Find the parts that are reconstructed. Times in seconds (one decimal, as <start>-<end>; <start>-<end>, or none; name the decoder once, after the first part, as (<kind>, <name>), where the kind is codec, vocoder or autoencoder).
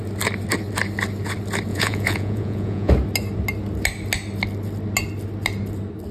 1.7-2.9 (vocoder, Vocos)